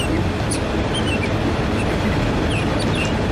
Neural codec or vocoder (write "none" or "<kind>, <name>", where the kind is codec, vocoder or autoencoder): none